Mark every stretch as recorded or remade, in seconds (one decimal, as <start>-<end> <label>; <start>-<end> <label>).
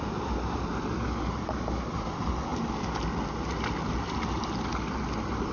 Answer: 0.0-5.5 recorded